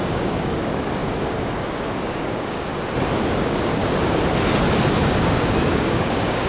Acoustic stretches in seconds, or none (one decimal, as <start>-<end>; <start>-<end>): 2.7-3.3; 3.8-4.9